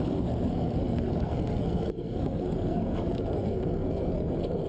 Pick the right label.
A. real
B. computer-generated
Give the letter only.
B